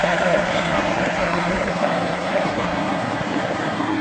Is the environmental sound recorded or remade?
remade